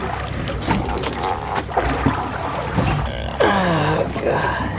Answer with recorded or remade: remade